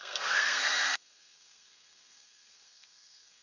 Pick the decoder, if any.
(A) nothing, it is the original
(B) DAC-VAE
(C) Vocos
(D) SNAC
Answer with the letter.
D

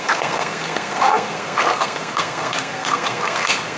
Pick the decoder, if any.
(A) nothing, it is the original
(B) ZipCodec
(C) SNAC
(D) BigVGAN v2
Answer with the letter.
C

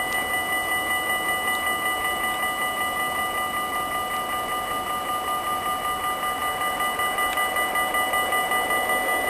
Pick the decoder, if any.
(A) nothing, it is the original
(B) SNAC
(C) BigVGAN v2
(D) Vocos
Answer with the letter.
A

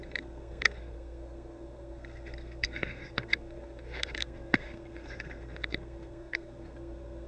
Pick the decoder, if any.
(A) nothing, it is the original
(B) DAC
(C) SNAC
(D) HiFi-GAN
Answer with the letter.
C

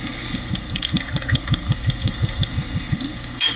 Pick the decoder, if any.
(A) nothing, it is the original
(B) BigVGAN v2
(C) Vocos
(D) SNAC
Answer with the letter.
D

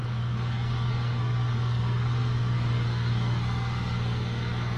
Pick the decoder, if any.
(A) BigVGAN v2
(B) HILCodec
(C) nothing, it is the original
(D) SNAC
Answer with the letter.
D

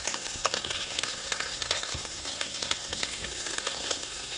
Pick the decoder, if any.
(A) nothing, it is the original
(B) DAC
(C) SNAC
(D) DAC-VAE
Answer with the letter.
C